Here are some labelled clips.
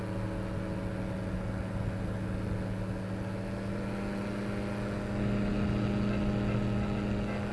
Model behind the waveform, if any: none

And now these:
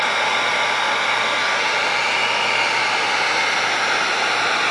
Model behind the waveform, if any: none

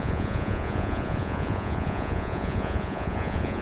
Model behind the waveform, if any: vocoder, Vocos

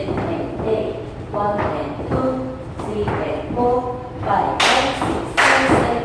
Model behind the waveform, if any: none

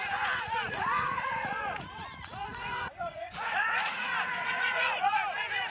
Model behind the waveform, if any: vocoder, Vocos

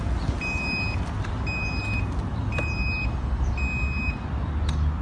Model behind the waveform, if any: none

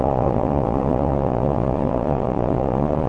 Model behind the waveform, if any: vocoder, Vocos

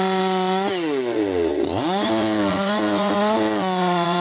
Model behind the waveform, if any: vocoder, Vocos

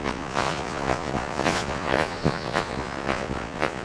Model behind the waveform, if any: vocoder, Vocos